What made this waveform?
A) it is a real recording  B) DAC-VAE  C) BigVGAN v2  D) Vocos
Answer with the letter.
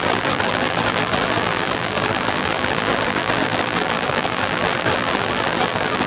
C